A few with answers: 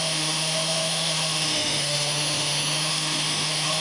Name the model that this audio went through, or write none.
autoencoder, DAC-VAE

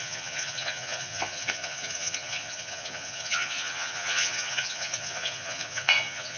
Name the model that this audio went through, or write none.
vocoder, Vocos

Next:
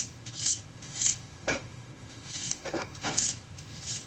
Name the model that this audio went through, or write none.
autoencoder, DAC-VAE